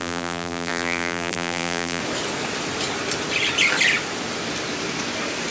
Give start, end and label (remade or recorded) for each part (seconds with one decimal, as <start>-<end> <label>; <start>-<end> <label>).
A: 0.0-2.0 remade; 2.0-5.5 recorded